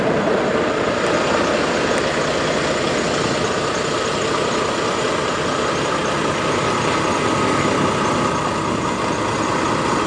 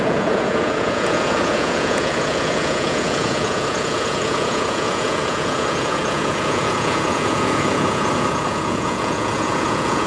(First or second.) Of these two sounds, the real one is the first